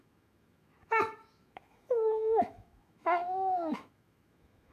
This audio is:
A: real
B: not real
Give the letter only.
B